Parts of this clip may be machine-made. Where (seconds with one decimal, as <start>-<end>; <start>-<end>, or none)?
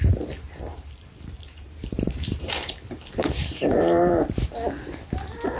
0.7-4.1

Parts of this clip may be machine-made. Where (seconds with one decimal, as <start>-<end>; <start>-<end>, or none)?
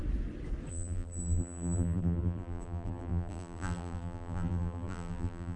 0.7-5.6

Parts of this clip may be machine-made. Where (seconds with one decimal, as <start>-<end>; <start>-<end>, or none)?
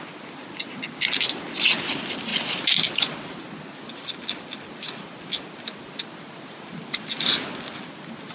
none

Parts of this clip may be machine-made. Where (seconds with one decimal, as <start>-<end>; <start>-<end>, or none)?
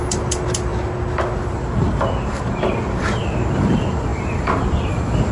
0.0-0.7; 3.2-5.3